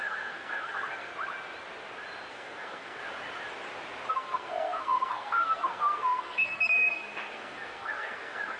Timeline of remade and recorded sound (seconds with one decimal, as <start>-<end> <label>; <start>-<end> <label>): 0.0-1.1 remade; 1.1-2.3 recorded; 2.3-3.0 remade; 3.0-4.1 recorded; 4.1-8.6 remade